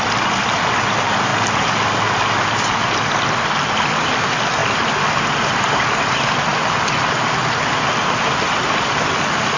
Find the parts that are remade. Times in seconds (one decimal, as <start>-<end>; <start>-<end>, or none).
none